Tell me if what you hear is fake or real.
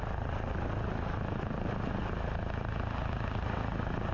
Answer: real